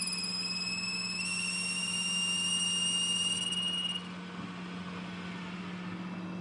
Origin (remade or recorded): recorded